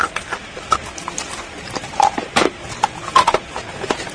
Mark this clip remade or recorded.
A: recorded